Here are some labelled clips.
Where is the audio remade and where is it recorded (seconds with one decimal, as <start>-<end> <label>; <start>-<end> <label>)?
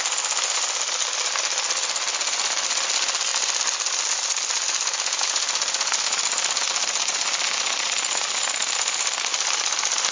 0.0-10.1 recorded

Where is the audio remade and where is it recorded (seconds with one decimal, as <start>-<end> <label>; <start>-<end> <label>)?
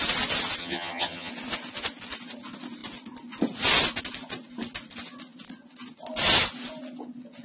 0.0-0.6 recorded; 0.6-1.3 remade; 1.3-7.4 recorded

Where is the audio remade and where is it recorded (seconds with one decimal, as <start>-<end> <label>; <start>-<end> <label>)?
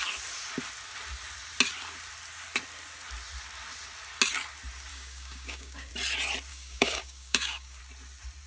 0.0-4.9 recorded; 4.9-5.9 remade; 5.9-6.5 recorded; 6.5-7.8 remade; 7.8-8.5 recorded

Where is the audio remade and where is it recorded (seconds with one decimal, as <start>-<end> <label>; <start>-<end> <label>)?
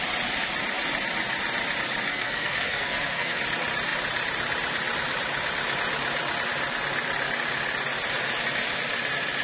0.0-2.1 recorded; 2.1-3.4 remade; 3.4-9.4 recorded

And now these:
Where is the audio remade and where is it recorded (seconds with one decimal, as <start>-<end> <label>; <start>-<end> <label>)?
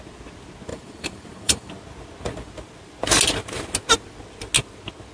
0.0-0.7 recorded; 0.7-1.7 remade; 1.7-5.1 recorded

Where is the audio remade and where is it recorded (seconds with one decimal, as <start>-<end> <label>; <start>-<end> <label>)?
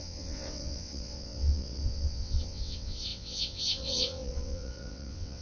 0.0-5.4 remade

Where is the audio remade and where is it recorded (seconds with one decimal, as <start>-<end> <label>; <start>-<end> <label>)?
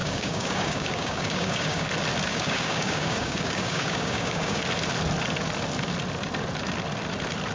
0.0-1.9 remade; 1.9-2.3 recorded; 2.3-4.6 remade; 4.6-7.5 recorded